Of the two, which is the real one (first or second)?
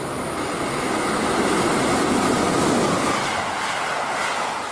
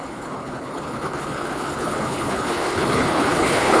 first